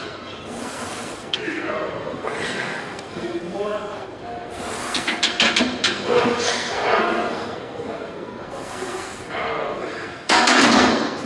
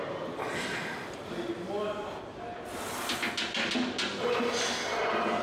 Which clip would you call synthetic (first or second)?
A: first